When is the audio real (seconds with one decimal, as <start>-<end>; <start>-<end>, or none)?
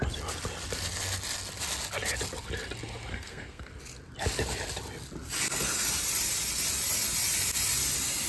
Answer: 0.0-3.1; 3.7-8.3